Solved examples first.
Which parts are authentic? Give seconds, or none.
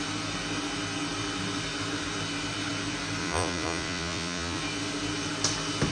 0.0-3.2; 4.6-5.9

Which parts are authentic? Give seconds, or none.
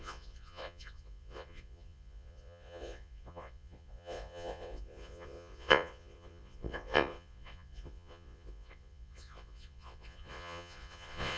none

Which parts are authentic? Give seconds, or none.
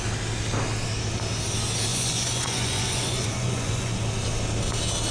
0.0-1.9; 3.9-5.1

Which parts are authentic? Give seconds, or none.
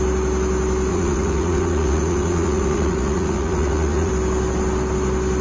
0.0-0.9; 4.1-5.4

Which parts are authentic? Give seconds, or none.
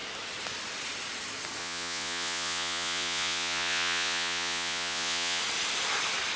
0.0-1.6; 5.4-6.4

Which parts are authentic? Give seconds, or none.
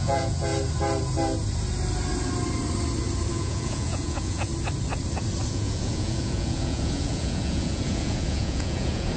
0.5-3.3; 4.5-5.5